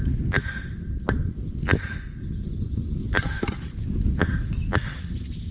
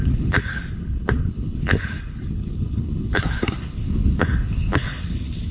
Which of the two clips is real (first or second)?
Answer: first